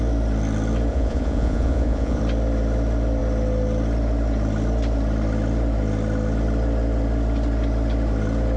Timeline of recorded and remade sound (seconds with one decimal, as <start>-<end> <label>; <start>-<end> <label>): 0.0-0.9 recorded; 0.9-2.2 remade; 2.2-8.6 recorded